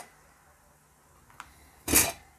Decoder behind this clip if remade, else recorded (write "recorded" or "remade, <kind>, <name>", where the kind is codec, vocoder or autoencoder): recorded